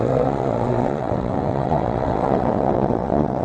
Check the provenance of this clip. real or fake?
fake